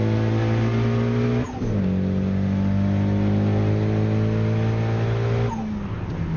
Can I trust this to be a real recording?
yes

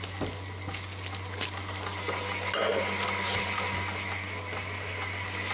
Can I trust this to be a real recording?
yes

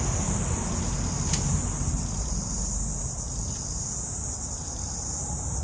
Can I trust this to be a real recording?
yes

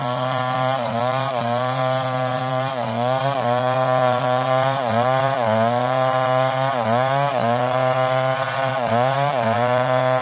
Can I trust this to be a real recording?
no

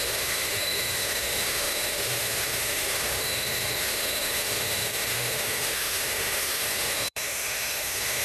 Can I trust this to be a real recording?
no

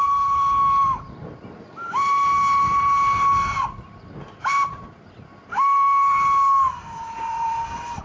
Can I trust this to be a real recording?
yes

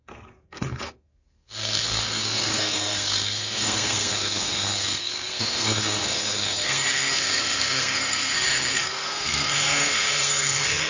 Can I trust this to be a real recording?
no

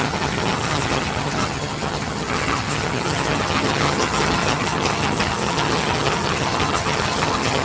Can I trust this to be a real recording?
no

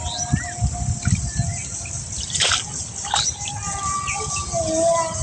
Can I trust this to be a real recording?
yes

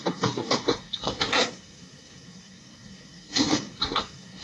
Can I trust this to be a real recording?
no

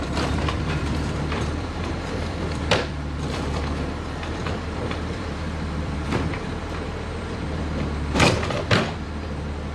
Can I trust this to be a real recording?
no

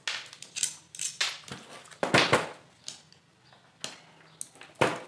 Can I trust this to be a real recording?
yes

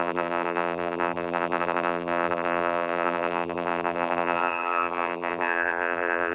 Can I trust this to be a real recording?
no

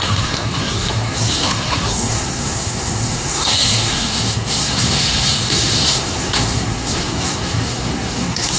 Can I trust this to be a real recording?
no